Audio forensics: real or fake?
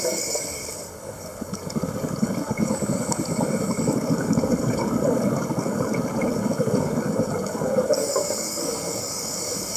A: fake